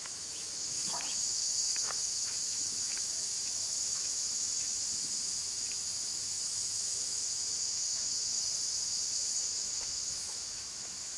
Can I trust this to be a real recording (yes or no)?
no